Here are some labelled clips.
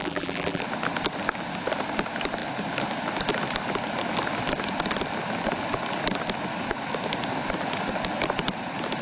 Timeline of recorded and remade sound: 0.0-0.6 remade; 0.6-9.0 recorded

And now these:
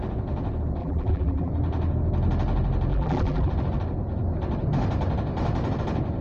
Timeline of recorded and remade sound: 0.0-0.8 recorded; 0.8-1.5 remade; 1.5-2.9 recorded; 2.9-3.5 remade; 3.5-6.2 recorded

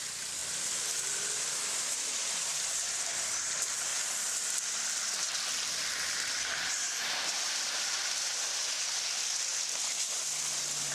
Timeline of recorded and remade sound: 0.0-0.4 recorded; 0.4-3.0 remade; 3.0-10.9 recorded